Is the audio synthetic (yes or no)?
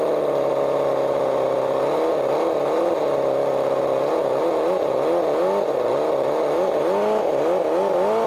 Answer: no